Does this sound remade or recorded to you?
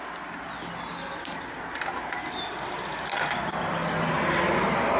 recorded